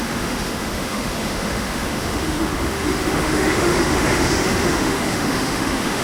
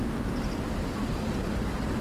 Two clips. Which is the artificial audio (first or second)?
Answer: first